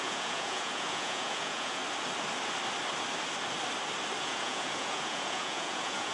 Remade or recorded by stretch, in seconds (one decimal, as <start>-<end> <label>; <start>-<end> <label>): 0.0-1.8 remade; 1.8-4.2 recorded; 4.2-6.1 remade